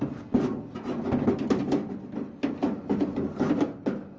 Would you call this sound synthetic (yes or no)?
no